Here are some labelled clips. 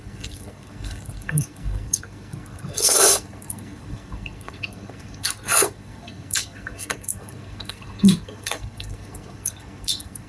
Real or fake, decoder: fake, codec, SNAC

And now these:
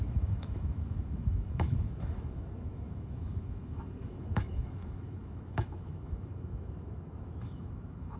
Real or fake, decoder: fake, autoencoder, DAC-VAE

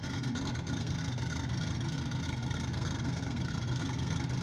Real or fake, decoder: fake, codec, SNAC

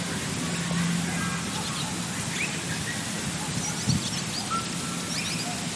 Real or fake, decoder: real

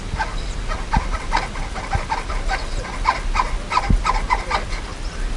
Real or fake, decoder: real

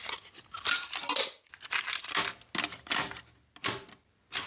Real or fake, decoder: real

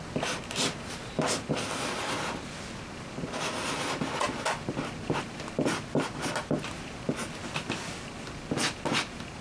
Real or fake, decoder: real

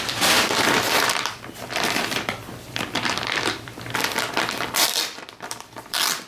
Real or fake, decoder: fake, vocoder, BigVGAN v2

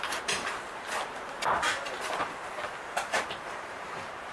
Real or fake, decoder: fake, vocoder, BigVGAN v2